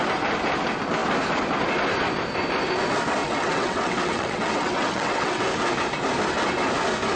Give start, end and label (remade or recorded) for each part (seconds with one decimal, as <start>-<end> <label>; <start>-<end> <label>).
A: 0.0-3.2 recorded; 3.2-5.4 remade; 5.4-7.2 recorded